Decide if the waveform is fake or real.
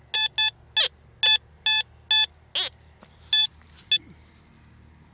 real